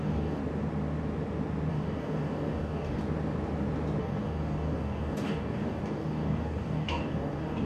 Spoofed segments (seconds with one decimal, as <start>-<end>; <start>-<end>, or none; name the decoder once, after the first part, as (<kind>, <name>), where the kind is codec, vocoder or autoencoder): 0.0-0.4 (codec, DAC); 1.7-3.0; 4.0-7.7